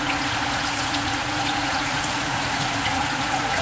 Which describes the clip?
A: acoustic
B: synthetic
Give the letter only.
B